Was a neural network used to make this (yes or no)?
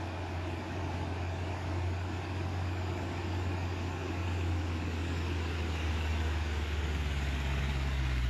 yes